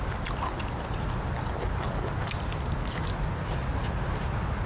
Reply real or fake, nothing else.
real